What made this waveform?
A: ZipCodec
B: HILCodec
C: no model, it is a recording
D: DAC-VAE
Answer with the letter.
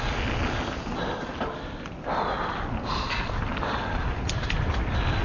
C